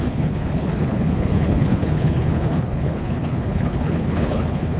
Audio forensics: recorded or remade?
remade